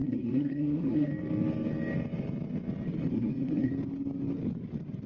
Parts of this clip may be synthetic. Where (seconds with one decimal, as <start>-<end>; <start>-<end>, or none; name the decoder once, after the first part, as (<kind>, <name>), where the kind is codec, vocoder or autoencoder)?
0.0-1.1 (codec, SNAC); 3.1-3.7